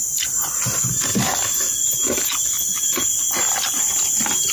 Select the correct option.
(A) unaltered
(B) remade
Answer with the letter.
A